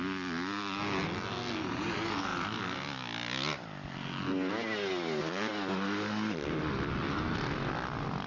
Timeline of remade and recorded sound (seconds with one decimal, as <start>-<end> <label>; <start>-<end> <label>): 0.0-8.3 recorded